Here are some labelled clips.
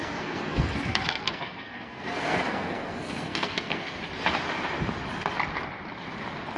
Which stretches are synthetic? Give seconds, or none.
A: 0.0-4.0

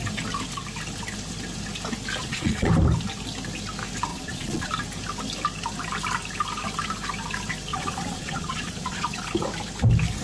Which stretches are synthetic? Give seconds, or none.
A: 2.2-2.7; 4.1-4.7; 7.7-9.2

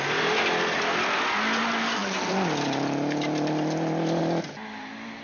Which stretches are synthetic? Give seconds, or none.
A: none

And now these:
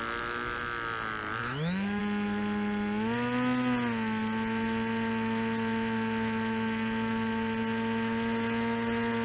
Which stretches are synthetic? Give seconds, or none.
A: 1.4-2.0